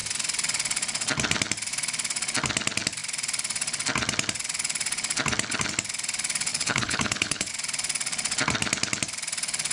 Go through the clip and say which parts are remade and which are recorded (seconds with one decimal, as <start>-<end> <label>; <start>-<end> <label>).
0.0-6.5 recorded; 6.5-7.5 remade; 7.5-9.7 recorded